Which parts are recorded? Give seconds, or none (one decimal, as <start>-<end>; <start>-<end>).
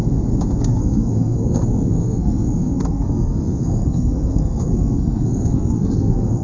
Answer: 0.0-0.6